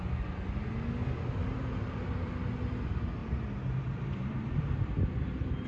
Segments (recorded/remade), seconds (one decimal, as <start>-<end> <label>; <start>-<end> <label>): 0.0-1.4 recorded; 1.4-2.3 remade; 2.3-3.2 recorded; 3.2-4.6 remade; 4.6-5.7 recorded